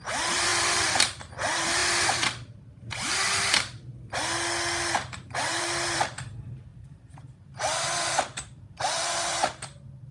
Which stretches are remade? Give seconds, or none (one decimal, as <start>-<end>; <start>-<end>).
0.0-3.9; 5.2-10.1